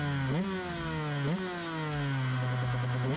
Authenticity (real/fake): real